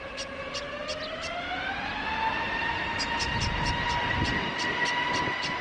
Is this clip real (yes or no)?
yes